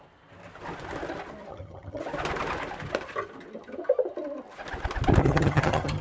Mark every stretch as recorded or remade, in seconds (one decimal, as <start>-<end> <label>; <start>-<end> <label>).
0.0-1.5 recorded; 1.5-2.0 remade; 2.0-5.2 recorded; 5.2-6.0 remade